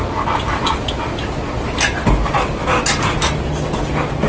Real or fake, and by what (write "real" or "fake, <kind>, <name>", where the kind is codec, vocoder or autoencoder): real